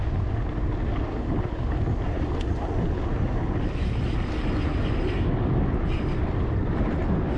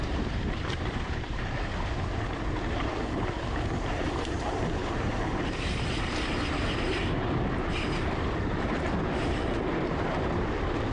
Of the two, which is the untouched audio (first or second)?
first